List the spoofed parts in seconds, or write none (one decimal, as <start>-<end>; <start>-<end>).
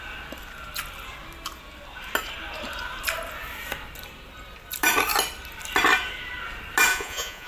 6.9-7.5